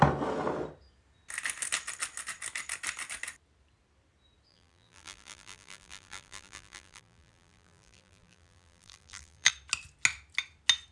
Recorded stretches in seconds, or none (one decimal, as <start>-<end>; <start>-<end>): 0.0-4.5; 9.5-10.9